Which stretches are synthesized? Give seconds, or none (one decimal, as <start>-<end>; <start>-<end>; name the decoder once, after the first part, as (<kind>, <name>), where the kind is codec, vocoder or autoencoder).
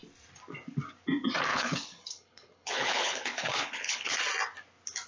1.5-4.2 (codec, HILCodec)